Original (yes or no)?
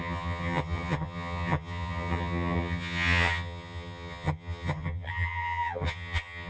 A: no